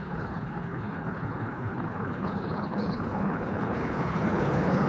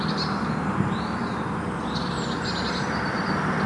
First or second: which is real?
second